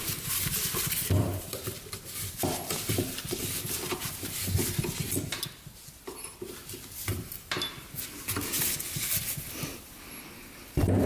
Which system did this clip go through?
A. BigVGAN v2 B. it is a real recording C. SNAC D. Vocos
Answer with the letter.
B